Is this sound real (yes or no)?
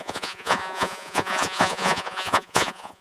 no